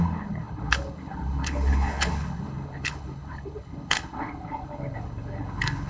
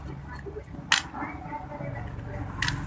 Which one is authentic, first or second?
second